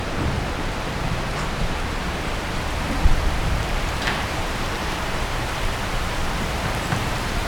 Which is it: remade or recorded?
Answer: remade